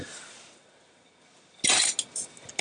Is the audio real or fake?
real